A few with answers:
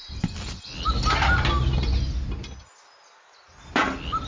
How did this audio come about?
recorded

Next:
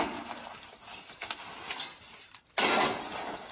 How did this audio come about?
recorded